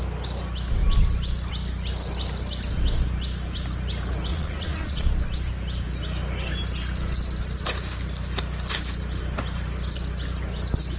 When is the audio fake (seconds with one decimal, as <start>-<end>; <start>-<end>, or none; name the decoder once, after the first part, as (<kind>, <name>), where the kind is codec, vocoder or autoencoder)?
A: 4.3-5.1 (vocoder, Vocos)